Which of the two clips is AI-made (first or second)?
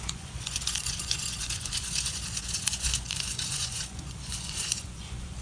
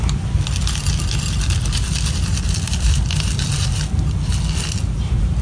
first